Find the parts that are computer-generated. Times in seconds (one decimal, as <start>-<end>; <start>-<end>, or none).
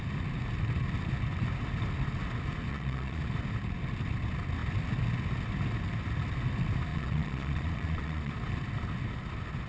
2.7-3.2; 6.9-8.3